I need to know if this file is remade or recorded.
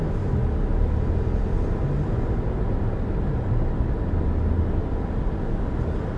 recorded